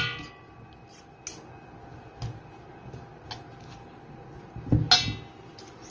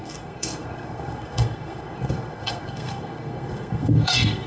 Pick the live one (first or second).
first